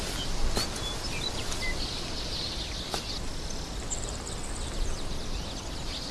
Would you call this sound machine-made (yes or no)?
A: no